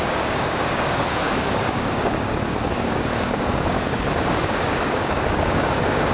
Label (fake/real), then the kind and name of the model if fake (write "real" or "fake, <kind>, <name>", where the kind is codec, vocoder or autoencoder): fake, codec, DAC